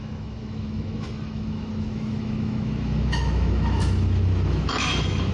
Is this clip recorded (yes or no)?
no